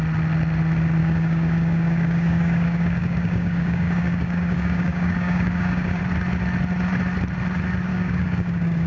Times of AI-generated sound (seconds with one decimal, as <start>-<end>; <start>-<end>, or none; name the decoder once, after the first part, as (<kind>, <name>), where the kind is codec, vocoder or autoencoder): 1.0-6.0 (codec, DAC); 7.9-8.9